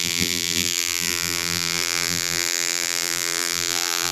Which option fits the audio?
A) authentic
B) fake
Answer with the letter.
B